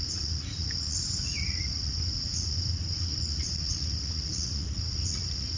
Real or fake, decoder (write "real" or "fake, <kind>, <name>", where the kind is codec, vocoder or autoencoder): fake, vocoder, Vocos